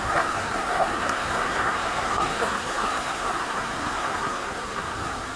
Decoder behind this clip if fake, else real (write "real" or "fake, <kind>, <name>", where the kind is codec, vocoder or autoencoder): fake, codec, SNAC